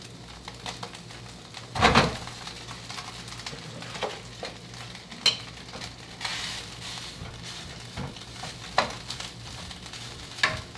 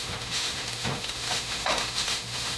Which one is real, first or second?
first